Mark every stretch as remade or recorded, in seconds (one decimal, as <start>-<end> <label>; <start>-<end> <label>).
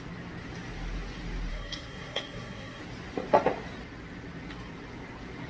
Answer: 0.0-1.5 recorded; 1.5-2.8 remade; 2.8-5.5 recorded